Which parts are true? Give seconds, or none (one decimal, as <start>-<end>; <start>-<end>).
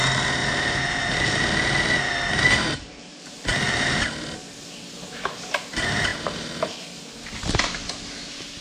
0.0-0.4; 1.4-2.3; 3.5-6.1; 6.7-8.6